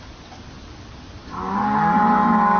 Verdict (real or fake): real